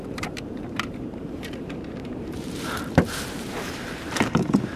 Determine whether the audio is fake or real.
fake